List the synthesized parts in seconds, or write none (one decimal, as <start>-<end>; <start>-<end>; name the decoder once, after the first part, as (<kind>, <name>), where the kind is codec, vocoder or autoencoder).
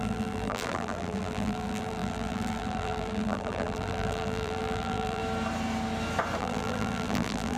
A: 0.0-5.2 (vocoder, BigVGAN v2); 6.4-7.6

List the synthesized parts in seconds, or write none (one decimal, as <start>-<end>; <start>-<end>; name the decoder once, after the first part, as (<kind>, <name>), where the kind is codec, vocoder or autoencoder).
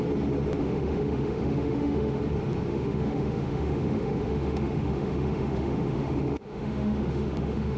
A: 0.6-2.2 (autoencoder, DAC-VAE); 2.7-7.8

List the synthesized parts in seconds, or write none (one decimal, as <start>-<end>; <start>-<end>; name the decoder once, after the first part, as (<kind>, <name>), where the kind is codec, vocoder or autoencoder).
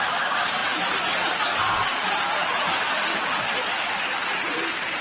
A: none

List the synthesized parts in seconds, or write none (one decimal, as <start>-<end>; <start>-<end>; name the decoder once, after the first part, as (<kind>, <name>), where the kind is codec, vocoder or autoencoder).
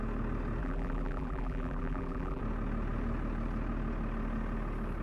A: 0.6-2.4 (vocoder, BigVGAN v2)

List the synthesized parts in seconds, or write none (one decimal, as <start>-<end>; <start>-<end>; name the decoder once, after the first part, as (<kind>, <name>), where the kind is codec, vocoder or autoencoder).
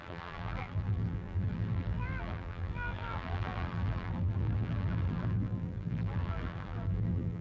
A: 0.0-7.4 (vocoder, BigVGAN v2)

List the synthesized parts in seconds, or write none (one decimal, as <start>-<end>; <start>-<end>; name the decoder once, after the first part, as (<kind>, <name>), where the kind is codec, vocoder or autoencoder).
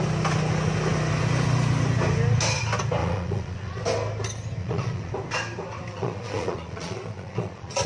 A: 3.0-3.8 (vocoder, Vocos); 4.6-5.1; 5.9-7.9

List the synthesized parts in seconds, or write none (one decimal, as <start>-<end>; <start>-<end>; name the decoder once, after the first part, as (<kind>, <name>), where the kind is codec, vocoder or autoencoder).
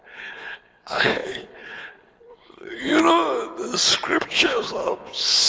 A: 0.0-2.9 (codec, HILCodec); 4.2-5.5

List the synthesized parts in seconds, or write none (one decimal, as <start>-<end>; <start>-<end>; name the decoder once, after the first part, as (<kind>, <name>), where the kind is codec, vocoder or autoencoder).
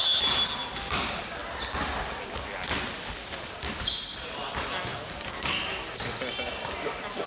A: none